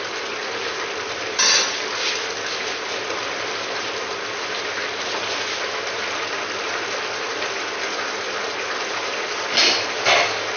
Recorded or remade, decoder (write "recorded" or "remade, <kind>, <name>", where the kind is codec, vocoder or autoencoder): recorded